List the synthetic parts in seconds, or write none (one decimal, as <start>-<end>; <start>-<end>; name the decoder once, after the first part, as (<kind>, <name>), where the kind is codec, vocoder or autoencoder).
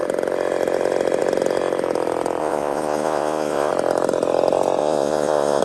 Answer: 2.4-3.7 (vocoder, Vocos); 4.8-5.6